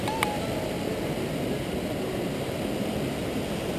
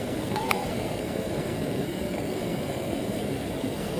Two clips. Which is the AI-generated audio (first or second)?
second